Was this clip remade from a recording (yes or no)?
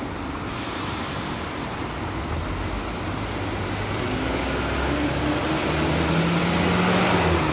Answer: no